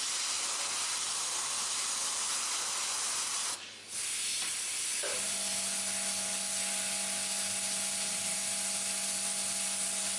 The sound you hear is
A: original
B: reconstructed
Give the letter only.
A